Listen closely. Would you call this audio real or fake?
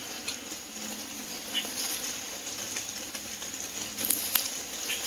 real